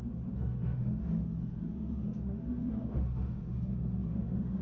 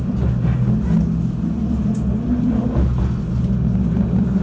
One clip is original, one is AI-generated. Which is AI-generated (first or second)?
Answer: first